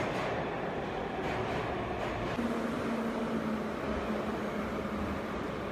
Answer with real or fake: real